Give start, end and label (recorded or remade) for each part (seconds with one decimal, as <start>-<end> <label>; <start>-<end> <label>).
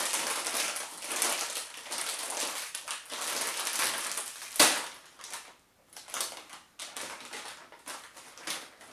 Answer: 0.0-1.6 recorded; 1.6-2.7 remade; 2.7-8.9 recorded